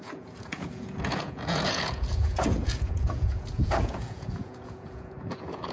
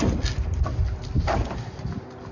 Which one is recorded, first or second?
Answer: second